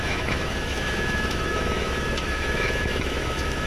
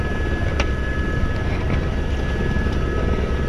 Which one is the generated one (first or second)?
first